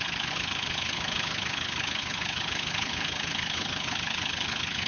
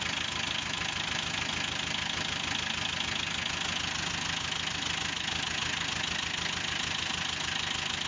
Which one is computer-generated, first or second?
first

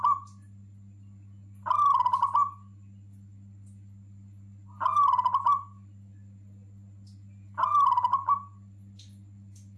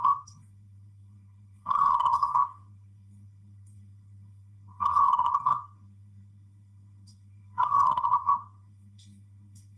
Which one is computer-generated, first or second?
second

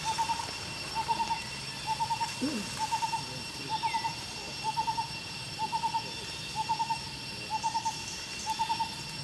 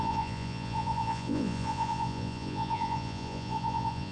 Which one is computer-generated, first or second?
second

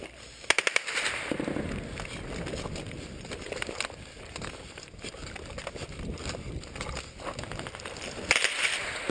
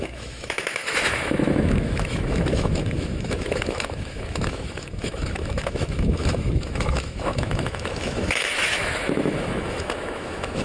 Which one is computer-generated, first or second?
second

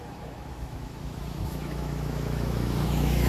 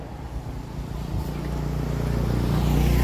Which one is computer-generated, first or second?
first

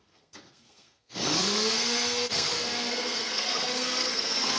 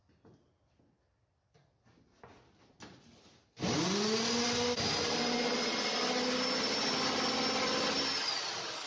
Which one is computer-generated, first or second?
first